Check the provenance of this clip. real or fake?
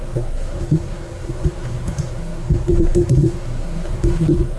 fake